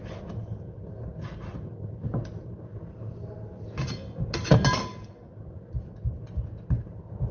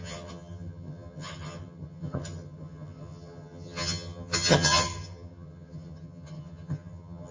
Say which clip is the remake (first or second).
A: second